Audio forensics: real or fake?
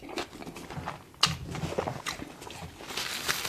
real